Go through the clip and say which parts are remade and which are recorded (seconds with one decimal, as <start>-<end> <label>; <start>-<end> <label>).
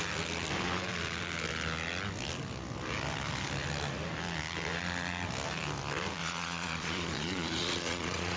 0.0-6.2 recorded; 6.2-8.4 remade